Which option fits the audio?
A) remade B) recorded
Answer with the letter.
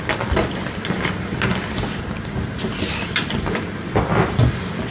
B